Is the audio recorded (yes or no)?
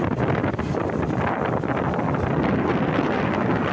yes